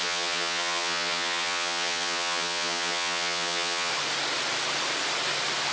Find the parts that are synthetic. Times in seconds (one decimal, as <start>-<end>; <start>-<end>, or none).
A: 0.0-3.9